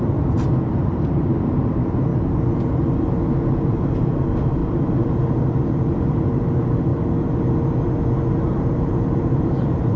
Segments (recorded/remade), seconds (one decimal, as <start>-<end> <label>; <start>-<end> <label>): 0.0-2.1 remade; 2.1-3.5 recorded; 3.5-6.9 remade; 6.9-8.3 recorded; 8.3-10.0 remade